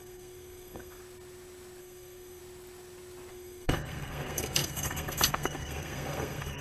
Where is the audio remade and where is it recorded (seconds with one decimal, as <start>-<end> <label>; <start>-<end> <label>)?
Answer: 0.0-1.0 remade; 1.0-1.8 recorded; 1.8-2.4 remade; 2.4-3.3 recorded; 3.3-6.6 remade